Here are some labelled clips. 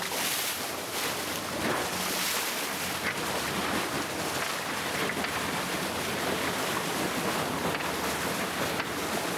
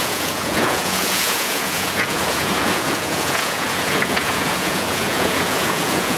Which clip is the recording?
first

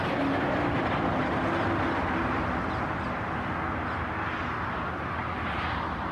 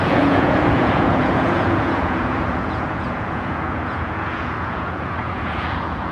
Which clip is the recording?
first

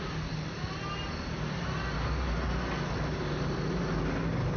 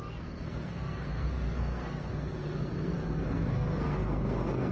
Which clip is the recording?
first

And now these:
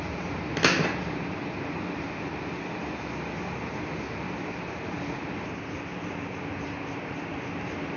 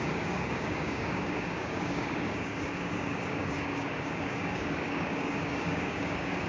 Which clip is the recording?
first